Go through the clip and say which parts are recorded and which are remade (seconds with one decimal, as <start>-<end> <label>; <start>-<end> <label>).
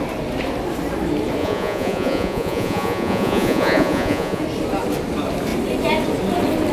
0.0-1.4 recorded; 1.4-4.4 remade; 4.4-6.7 recorded